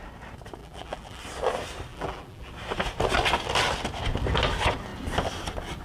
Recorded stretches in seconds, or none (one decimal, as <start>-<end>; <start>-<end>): 0.0-0.6; 1.2-1.9; 2.5-5.8